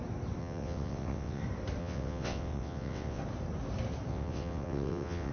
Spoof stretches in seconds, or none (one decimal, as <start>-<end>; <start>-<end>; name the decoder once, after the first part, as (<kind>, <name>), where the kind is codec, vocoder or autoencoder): 0.4-1.4 (vocoder, WaveNeXt); 1.8-3.2; 4.1-5.3